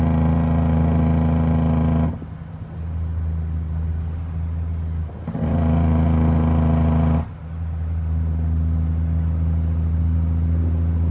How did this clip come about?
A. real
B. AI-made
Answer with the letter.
A